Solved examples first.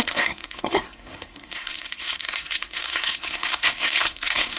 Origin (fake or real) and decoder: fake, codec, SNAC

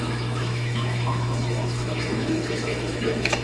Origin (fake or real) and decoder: fake, autoencoder, DAC-VAE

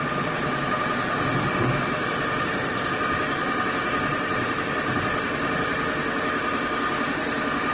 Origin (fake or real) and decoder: real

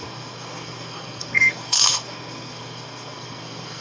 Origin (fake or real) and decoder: fake, codec, SNAC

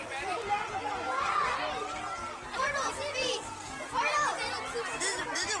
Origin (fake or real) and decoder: real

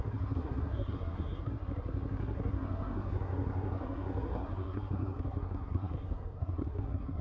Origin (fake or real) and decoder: fake, codec, SNAC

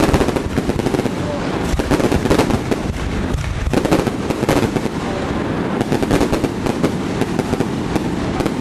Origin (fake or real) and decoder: real